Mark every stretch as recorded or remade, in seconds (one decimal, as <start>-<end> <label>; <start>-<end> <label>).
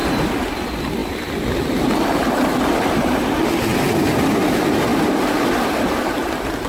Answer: 0.0-0.5 remade; 0.5-4.9 recorded; 4.9-6.7 remade